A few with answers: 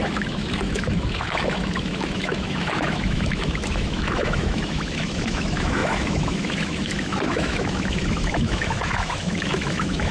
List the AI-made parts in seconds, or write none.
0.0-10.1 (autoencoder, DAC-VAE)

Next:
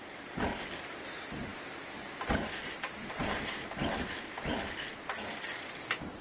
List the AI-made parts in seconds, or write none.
none

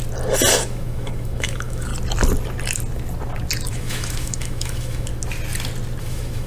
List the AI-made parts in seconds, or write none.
0.6-1.9 (autoencoder, DAC-VAE); 3.7-5.1; 6.0-6.5

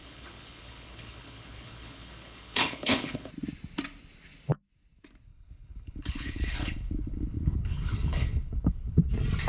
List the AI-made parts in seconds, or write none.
0.0-3.3 (codec, HILCodec); 5.3-9.1

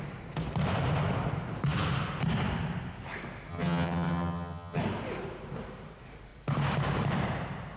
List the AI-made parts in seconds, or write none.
3.5-4.8 (vocoder, HiFi-GAN)

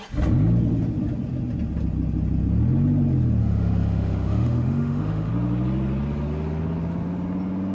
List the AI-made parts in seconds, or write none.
3.4-5.3 (autoencoder, DAC-VAE)